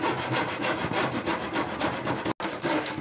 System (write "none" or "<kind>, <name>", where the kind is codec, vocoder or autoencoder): none